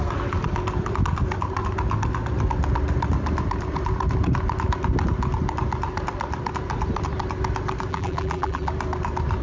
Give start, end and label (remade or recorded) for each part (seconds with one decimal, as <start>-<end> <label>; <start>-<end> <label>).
0.0-7.9 recorded; 7.9-8.7 remade; 8.7-9.4 recorded